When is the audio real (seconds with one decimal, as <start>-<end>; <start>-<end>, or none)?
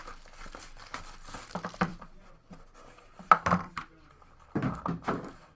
0.0-5.5